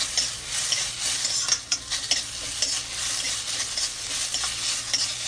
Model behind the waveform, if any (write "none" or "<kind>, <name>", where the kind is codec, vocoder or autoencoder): none